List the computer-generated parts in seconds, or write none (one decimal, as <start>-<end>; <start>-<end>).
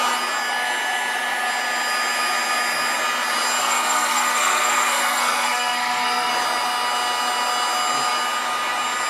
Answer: 3.6-6.3